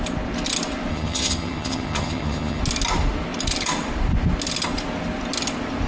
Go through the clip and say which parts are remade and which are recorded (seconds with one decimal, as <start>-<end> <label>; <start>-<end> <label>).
0.0-0.9 recorded; 0.9-2.6 remade; 2.6-5.9 recorded

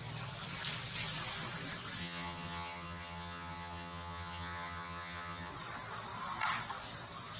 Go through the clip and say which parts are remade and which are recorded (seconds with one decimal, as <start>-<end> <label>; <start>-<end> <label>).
0.0-2.0 recorded; 2.0-5.5 remade; 5.5-7.4 recorded

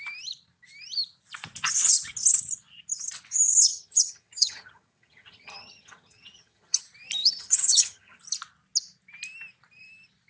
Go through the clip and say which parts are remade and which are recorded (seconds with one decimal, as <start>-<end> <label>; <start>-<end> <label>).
0.0-3.7 recorded; 3.7-6.8 remade; 6.8-7.2 recorded; 7.2-8.2 remade; 8.2-10.3 recorded

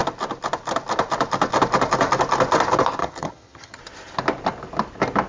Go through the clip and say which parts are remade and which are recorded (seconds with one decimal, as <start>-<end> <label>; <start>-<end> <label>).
0.0-3.0 recorded; 3.0-3.8 remade; 3.8-5.3 recorded

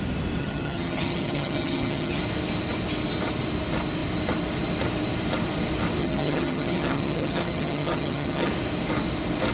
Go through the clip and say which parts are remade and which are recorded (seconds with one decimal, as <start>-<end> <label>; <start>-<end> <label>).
0.0-0.4 recorded; 0.4-2.2 remade; 2.2-6.0 recorded; 6.0-8.5 remade; 8.5-9.5 recorded

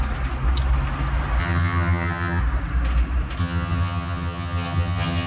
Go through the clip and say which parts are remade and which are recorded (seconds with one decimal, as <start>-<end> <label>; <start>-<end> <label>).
0.0-1.4 recorded; 1.4-2.4 remade; 2.4-3.4 recorded; 3.4-5.3 remade